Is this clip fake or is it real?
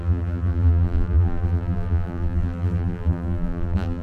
fake